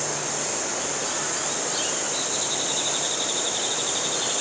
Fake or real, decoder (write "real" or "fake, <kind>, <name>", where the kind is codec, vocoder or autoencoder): real